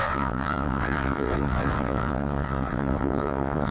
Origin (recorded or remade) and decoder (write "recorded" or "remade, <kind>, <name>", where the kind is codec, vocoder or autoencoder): remade, vocoder, WaveNeXt